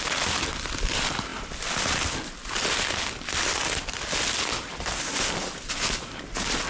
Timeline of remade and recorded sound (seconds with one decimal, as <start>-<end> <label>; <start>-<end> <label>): 0.0-6.7 recorded